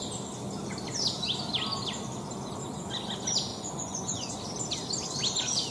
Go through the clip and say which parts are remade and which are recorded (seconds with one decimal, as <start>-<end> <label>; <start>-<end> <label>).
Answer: 0.0-3.5 recorded; 3.5-4.4 remade; 4.4-5.7 recorded